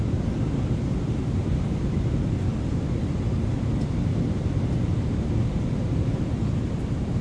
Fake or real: real